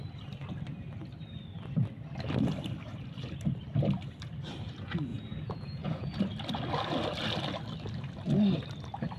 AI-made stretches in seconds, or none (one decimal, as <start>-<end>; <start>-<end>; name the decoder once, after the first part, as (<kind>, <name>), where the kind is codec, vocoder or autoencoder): 5.1-6.2 (vocoder, Vocos)

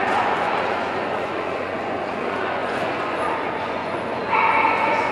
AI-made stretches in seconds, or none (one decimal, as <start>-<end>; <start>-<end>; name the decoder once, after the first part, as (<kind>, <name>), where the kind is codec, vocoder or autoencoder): 0.0-5.1 (vocoder, Vocos)

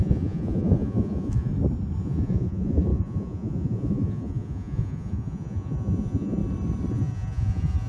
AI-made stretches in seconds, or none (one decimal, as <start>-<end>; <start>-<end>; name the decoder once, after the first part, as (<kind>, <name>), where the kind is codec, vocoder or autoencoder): 0.0-1.5 (vocoder, Vocos); 2.0-6.4; 6.9-7.9

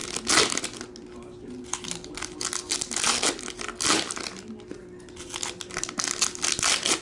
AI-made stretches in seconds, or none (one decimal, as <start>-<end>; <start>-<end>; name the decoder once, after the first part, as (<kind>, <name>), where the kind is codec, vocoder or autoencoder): none

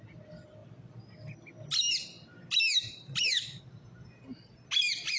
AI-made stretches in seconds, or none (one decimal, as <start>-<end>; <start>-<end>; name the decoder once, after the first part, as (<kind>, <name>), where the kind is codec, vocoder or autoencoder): none

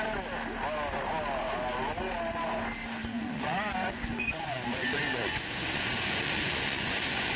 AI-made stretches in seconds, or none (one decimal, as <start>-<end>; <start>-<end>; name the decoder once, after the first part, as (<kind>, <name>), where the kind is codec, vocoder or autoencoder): 3.0-7.4 (vocoder, Vocos)

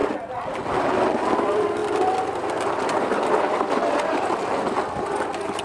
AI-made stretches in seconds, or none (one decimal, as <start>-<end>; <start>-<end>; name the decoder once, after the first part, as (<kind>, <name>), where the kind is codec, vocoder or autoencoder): none